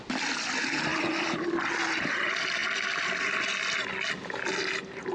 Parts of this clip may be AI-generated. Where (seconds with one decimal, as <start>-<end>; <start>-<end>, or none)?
none